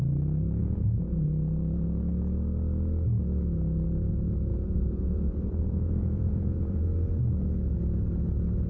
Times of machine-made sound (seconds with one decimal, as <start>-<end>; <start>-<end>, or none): 0.6-1.3; 4.5-6.9